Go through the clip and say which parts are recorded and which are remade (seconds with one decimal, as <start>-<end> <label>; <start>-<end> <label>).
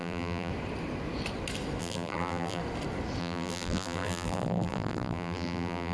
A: 0.0-0.5 remade; 0.5-1.8 recorded; 1.8-2.6 remade; 2.6-3.2 recorded; 3.2-5.9 remade